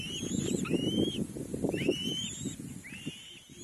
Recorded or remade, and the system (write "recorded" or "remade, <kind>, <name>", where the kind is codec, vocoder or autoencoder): recorded